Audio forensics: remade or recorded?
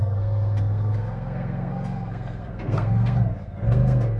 remade